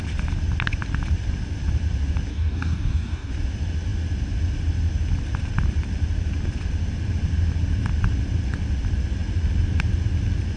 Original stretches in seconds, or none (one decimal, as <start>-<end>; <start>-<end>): 0.0-2.3; 3.3-10.6